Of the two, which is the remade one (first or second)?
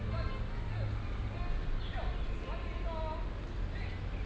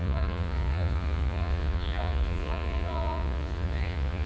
second